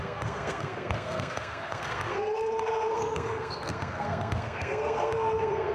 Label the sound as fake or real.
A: fake